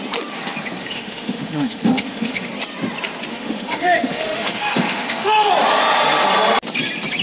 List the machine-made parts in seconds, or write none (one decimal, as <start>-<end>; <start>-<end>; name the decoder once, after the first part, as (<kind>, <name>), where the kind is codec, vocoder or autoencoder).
0.8-2.5 (autoencoder, DAC-VAE); 3.3-5.5